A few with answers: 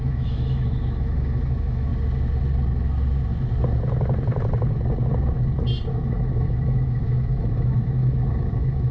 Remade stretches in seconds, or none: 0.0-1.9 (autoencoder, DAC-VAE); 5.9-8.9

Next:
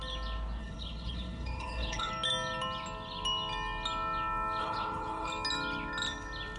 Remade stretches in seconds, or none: 0.6-2.1 (codec, HILCodec); 4.6-5.3

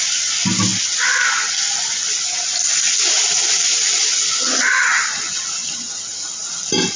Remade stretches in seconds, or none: none